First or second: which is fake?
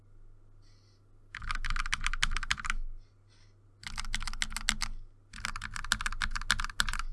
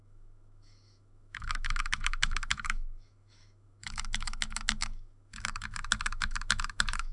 second